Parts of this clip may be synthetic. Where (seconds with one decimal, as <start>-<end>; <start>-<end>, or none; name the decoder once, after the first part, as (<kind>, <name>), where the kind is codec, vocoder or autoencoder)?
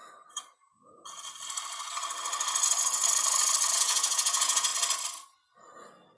3.7-4.7 (vocoder, Vocos)